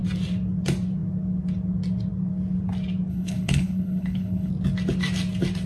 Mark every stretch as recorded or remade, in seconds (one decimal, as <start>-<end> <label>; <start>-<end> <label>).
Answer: 0.0-3.1 recorded; 3.1-4.5 remade; 4.5-5.7 recorded